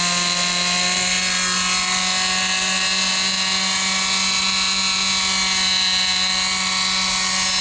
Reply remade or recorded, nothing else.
recorded